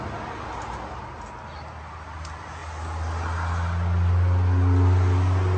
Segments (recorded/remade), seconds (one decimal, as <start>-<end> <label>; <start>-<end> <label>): 0.0-5.6 recorded